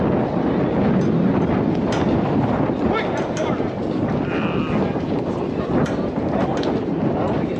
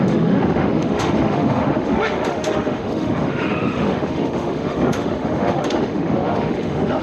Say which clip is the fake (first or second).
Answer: second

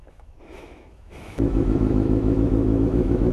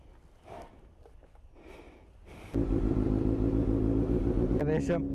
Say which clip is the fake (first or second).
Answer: first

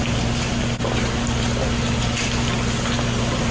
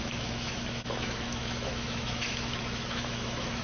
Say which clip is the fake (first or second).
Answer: second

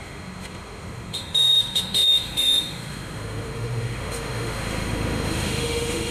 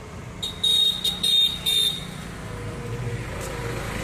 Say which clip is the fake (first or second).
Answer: first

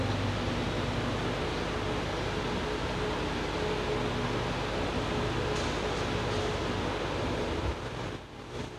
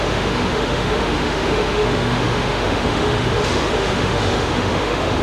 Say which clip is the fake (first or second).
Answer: second